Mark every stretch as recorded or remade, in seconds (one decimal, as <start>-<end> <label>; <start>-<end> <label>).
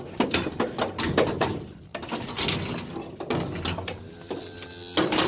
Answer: 0.0-5.3 recorded